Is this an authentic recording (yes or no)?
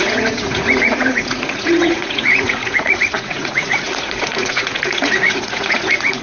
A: no